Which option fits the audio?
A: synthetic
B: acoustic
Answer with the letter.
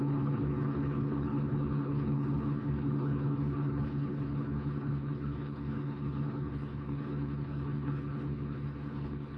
A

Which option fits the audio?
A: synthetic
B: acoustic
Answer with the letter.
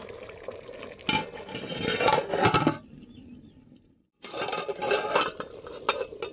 B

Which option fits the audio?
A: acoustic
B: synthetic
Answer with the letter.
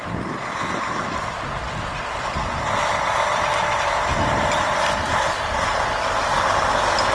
A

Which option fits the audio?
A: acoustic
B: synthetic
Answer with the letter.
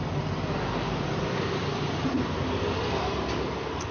A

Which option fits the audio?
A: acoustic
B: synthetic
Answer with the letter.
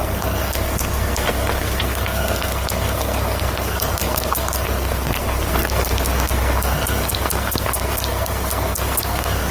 B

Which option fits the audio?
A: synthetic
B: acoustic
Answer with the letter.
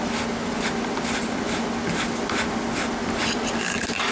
B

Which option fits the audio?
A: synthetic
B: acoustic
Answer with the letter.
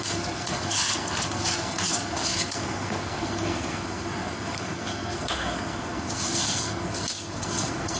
A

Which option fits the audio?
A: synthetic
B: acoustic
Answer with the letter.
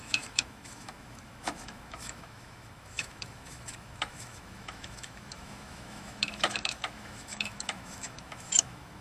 A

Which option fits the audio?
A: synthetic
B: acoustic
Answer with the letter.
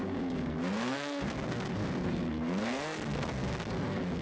A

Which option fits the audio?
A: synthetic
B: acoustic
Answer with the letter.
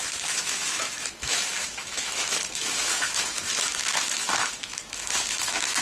A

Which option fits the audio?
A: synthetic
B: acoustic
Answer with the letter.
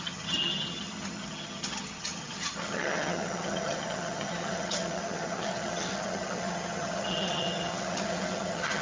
A